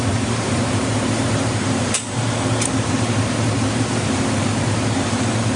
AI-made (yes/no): yes